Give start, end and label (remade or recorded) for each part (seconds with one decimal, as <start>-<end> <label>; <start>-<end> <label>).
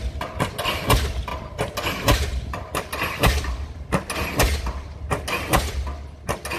0.0-6.6 recorded